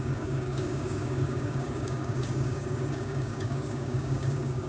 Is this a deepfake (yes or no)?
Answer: yes